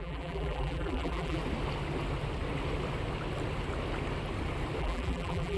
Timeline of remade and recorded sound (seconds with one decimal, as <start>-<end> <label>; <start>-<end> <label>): 0.0-1.4 remade; 1.4-4.8 recorded; 4.8-5.6 remade